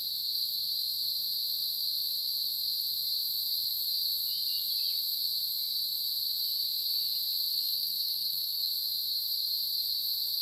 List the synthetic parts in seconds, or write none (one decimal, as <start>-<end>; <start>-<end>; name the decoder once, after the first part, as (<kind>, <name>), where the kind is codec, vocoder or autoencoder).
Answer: 7.5-8.7 (codec, SNAC)